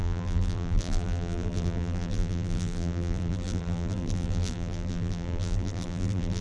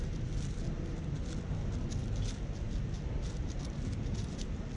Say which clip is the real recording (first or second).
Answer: second